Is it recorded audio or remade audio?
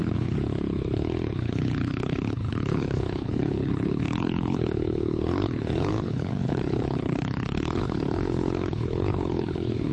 remade